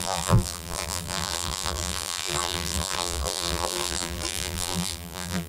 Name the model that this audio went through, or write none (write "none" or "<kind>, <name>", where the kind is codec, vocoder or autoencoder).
vocoder, BigVGAN v2